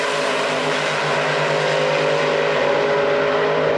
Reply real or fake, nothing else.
real